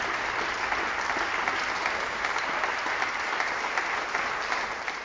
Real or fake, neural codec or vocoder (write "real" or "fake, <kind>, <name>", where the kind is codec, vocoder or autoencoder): real